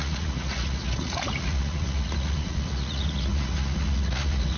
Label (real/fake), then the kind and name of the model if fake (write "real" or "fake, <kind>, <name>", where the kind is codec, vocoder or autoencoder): fake, vocoder, Vocos